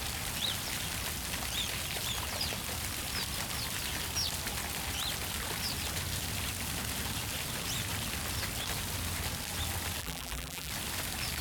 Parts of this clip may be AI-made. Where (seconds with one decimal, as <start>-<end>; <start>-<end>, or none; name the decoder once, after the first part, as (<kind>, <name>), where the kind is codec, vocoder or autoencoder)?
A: 10.0-10.7 (vocoder, BigVGAN v2)